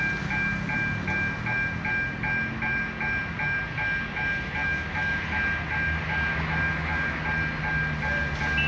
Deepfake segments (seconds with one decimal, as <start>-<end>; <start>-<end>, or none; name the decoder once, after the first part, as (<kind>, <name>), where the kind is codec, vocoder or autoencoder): 4.6-5.2 (autoencoder, DAC-VAE); 6.3-7.2